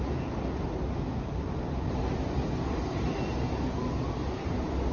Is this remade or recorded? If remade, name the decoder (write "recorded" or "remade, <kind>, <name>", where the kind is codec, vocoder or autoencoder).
recorded